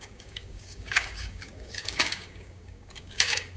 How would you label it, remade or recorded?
remade